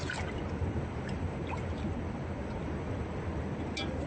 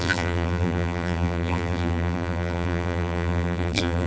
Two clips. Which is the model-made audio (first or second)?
second